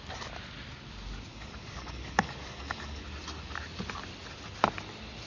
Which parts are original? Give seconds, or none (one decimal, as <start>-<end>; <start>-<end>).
0.0-1.3; 3.0-5.3